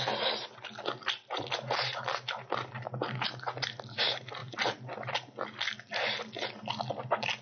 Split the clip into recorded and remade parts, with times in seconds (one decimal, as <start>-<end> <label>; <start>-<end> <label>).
0.0-7.4 recorded

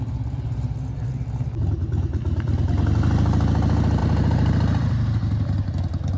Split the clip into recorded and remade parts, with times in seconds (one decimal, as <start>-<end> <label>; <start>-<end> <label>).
0.0-4.0 recorded; 4.0-5.7 remade; 5.7-6.2 recorded